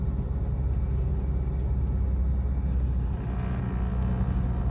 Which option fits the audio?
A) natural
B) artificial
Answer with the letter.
A